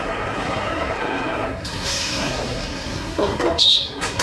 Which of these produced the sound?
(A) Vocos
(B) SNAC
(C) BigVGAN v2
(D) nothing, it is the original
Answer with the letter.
B